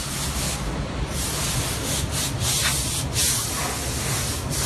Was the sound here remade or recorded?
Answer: recorded